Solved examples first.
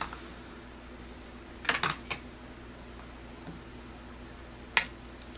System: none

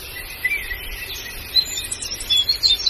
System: vocoder, BigVGAN v2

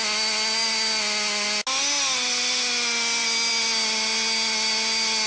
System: none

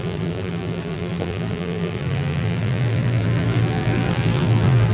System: vocoder, BigVGAN v2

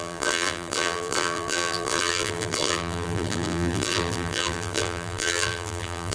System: vocoder, BigVGAN v2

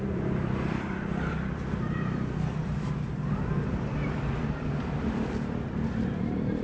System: vocoder, BigVGAN v2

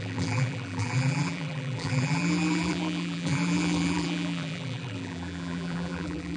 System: vocoder, BigVGAN v2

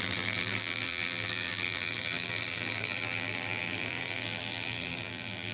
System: vocoder, BigVGAN v2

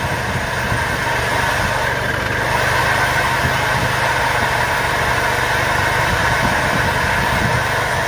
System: none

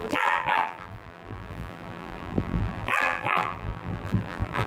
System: vocoder, BigVGAN v2